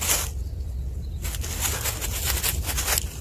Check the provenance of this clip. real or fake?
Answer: real